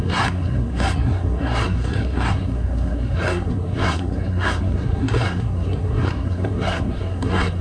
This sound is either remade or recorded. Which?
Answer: remade